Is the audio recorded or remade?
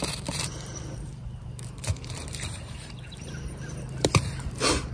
remade